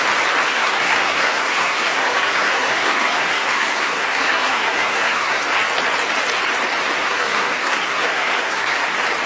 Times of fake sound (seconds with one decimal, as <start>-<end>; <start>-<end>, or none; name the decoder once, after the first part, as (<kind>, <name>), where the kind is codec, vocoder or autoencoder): 0.5-5.4 (codec, SNAC); 7.0-8.8